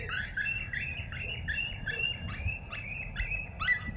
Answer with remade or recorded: recorded